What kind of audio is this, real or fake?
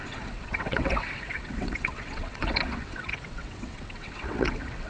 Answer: fake